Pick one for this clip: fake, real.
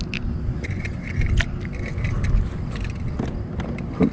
real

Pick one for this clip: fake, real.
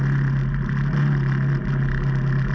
real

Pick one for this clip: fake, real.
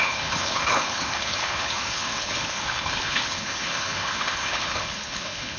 fake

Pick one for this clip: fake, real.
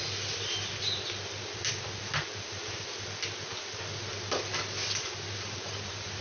real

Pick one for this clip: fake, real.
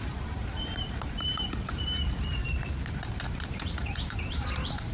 fake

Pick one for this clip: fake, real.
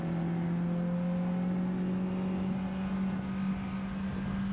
real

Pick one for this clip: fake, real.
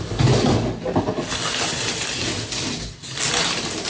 real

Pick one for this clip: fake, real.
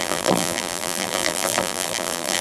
fake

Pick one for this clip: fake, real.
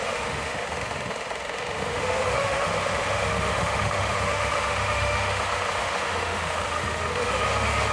fake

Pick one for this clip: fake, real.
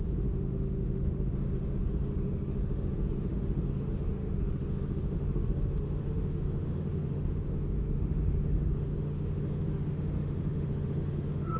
fake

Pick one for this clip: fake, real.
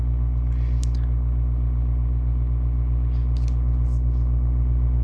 real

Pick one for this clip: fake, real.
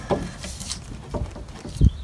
real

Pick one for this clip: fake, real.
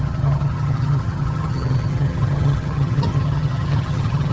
fake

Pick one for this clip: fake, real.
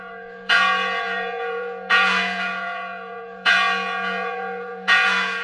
fake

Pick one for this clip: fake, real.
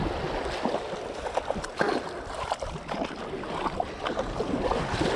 real